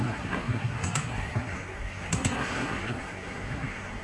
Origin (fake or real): fake